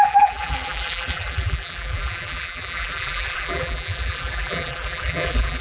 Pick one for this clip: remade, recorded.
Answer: remade